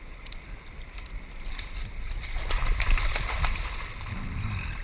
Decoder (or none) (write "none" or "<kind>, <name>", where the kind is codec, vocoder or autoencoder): vocoder, BigVGAN v2